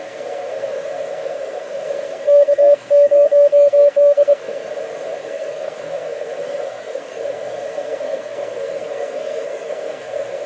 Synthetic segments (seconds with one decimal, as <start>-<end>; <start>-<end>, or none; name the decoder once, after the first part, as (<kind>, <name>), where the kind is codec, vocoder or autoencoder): 0.0-4.7 (codec, SNAC); 5.2-10.5